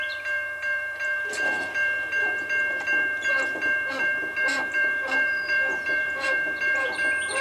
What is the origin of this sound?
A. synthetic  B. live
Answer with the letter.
A